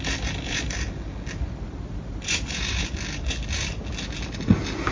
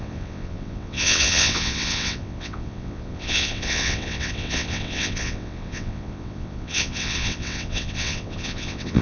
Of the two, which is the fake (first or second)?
second